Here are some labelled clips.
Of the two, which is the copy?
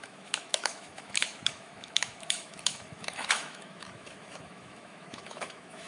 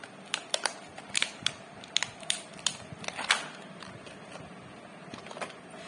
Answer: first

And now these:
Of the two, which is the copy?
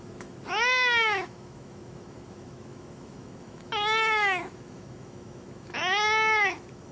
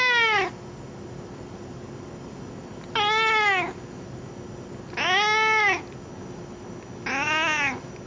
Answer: first